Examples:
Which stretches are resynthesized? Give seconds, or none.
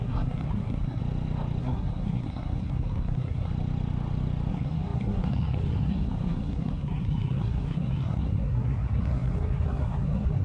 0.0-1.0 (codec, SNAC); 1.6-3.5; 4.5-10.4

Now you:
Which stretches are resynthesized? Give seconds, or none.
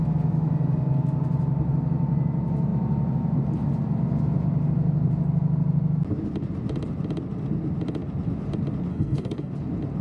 8.9-9.5 (codec, SNAC)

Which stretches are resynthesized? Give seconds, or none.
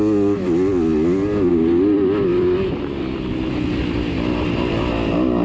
none